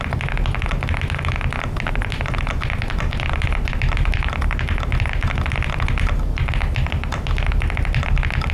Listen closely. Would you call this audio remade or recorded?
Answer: recorded